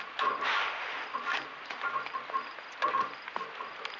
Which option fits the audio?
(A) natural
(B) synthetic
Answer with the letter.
A